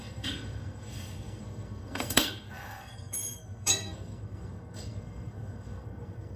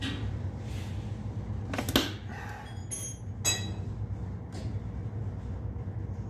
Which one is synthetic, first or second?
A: first